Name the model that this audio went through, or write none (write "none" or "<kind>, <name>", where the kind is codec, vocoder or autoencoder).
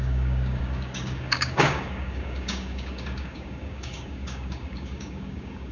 codec, DAC